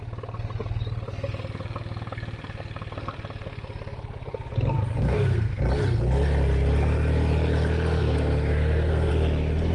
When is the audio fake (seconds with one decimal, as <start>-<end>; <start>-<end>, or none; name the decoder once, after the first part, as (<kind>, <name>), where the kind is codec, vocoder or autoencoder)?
5.0-5.6 (codec, SNAC); 8.0-9.1